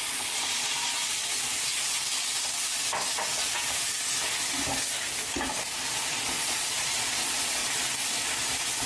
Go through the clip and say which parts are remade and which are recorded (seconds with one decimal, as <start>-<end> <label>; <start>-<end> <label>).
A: 0.0-0.9 remade; 0.9-6.1 recorded; 6.1-7.6 remade; 7.6-8.9 recorded